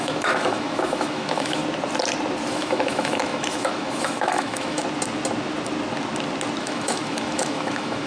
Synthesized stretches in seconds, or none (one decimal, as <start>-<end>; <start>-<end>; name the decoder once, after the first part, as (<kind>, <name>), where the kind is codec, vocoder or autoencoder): 0.0-1.6 (autoencoder, DAC-VAE); 2.5-4.8; 6.6-8.1